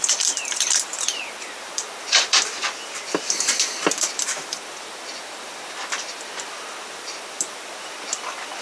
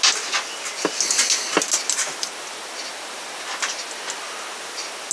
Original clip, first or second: second